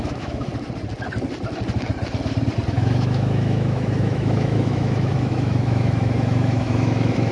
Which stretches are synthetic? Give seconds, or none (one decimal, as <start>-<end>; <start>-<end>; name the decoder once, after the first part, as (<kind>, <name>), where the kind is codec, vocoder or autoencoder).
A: 0.0-0.5 (autoencoder, DAC-VAE); 2.7-7.3